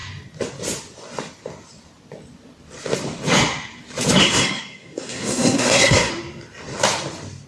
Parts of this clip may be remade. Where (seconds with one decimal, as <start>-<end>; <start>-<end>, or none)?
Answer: 4.2-6.1